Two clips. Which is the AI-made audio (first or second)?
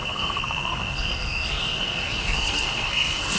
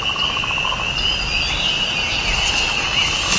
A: first